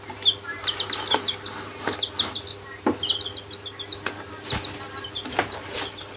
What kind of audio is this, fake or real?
real